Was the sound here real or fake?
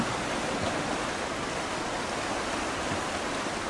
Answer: real